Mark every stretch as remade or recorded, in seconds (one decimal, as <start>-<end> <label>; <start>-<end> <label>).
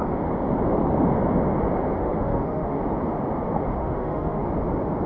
0.0-2.0 recorded; 2.0-2.8 remade; 2.8-3.8 recorded; 3.8-4.4 remade; 4.4-5.1 recorded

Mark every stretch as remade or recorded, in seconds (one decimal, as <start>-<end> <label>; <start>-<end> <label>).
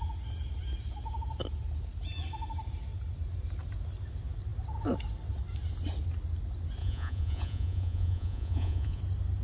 0.0-6.8 recorded; 6.8-9.0 remade; 9.0-9.4 recorded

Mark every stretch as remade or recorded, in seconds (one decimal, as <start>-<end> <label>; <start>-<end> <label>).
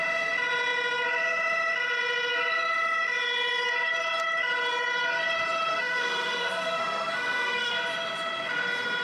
0.0-5.7 recorded; 5.7-7.7 remade; 7.7-9.0 recorded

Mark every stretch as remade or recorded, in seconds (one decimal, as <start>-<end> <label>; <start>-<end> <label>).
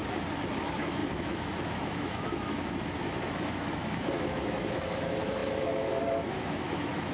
0.0-0.6 recorded; 0.6-7.1 remade